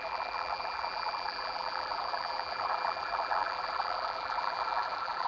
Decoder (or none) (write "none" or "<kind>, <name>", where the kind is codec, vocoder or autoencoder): vocoder, BigVGAN v2